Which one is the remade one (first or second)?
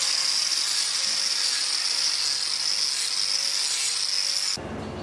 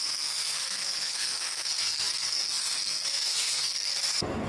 second